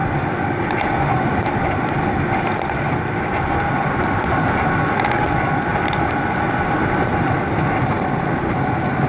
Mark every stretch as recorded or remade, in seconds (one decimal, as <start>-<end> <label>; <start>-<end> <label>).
0.0-4.5 remade; 4.5-5.7 recorded; 5.7-7.6 remade; 7.6-9.1 recorded